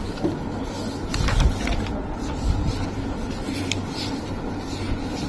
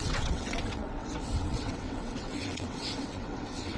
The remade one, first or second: second